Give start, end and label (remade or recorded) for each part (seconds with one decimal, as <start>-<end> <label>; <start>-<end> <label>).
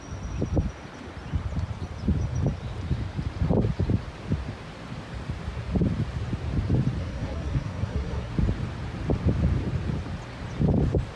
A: 0.0-7.0 recorded; 7.0-8.3 remade; 8.3-11.2 recorded